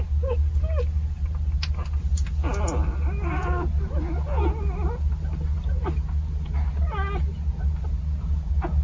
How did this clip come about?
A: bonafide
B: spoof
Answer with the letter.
A